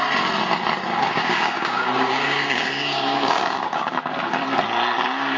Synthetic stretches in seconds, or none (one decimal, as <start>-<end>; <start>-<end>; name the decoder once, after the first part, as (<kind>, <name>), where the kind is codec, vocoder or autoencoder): 0.9-4.1 (codec, DAC)